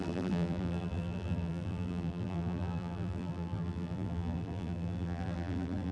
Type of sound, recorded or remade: remade